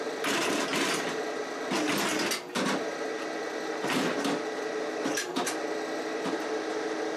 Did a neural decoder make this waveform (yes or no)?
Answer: no